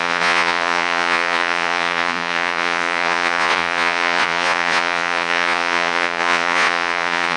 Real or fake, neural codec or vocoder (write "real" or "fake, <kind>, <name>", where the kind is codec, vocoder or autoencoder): fake, vocoder, Vocos